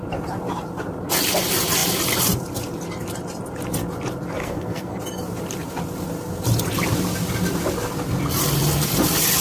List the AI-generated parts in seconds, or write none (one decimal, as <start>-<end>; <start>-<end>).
4.4-5.0